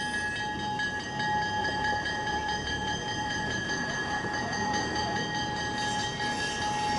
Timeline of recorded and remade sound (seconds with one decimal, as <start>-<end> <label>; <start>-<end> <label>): 0.0-1.6 recorded; 1.6-5.2 remade; 5.2-7.0 recorded